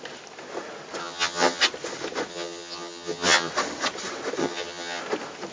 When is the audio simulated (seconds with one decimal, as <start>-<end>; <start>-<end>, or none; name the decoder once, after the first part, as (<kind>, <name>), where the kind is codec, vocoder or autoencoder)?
1.0-1.6 (vocoder, HiFi-GAN); 2.3-3.5; 4.4-5.0